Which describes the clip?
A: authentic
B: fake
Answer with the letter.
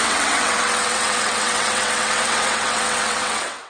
B